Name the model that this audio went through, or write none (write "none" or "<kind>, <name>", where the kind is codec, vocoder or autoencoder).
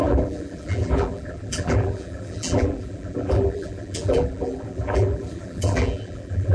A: vocoder, BigVGAN v2